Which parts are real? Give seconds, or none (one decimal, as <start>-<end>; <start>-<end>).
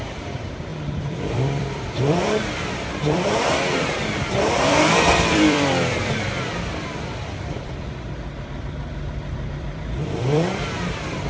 none